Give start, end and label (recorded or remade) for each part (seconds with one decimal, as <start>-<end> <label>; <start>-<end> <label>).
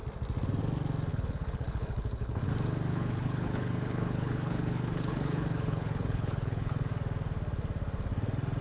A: 0.0-1.1 recorded; 1.1-2.5 remade; 2.5-2.9 recorded; 2.9-6.9 remade; 6.9-8.6 recorded